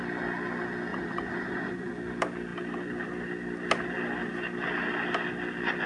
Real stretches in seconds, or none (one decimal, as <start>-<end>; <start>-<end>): 0.0-0.9; 1.9-5.9